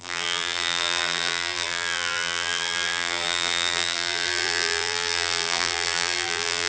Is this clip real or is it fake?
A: fake